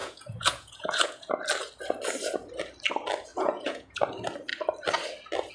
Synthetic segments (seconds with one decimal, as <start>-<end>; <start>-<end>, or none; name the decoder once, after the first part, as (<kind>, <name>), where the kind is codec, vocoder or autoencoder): 0.0-1.3 (vocoder, Vocos); 3.3-4.0